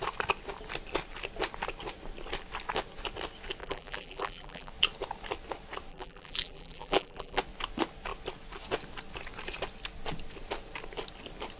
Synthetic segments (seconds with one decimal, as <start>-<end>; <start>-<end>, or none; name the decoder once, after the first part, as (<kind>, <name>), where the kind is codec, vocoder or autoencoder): 3.6-4.7 (vocoder, BigVGAN v2); 5.9-7.4